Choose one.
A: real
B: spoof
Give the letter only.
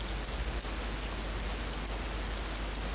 A